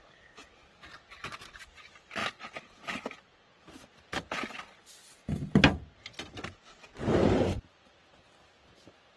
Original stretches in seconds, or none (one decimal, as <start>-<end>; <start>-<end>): 0.0-9.2